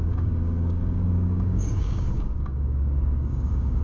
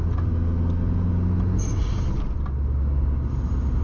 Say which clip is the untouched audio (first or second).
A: second